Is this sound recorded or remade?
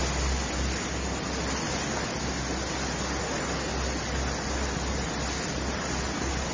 recorded